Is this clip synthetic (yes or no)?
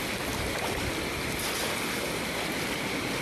no